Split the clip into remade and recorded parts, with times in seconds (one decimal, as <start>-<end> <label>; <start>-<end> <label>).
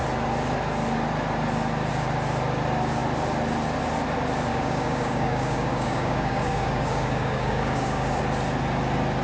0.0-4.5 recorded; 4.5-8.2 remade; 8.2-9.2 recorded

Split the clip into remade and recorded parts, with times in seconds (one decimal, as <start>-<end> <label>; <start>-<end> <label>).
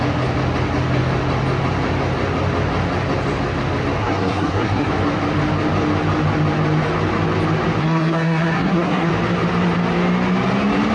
0.0-4.0 recorded; 4.0-4.9 remade; 4.9-7.8 recorded; 7.8-9.1 remade; 9.1-10.9 recorded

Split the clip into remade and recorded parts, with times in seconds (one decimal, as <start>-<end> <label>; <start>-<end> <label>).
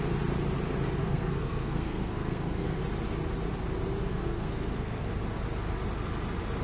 0.0-1.0 recorded; 1.0-2.8 remade; 2.8-4.1 recorded; 4.1-5.1 remade; 5.1-6.6 recorded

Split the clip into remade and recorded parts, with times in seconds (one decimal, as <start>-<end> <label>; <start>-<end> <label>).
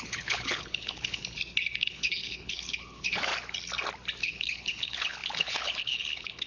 0.0-1.2 remade; 1.2-1.9 recorded; 1.9-3.3 remade; 3.3-4.2 recorded; 4.2-6.5 remade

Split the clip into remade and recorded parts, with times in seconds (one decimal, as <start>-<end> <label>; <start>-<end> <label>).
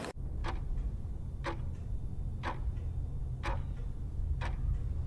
0.0-0.4 recorded; 0.4-1.7 remade; 1.7-5.1 recorded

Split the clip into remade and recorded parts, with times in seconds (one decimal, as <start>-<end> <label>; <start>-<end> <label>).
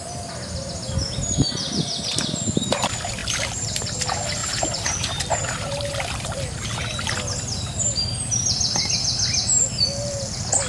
0.0-3.2 recorded; 3.2-3.8 remade; 3.8-4.4 recorded; 4.4-6.6 remade; 6.6-10.7 recorded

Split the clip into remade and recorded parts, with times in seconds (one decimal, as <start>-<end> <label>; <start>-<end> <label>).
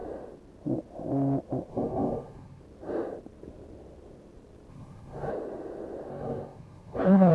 0.0-1.7 recorded; 1.7-2.6 remade; 2.6-4.7 recorded; 4.7-5.3 remade; 5.3-6.1 recorded; 6.1-7.3 remade